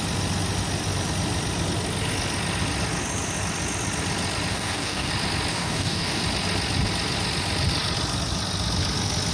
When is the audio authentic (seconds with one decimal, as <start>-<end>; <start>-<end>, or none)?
0.0-4.5; 5.1-5.5; 6.2-9.3